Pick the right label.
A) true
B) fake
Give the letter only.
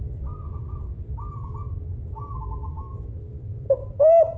A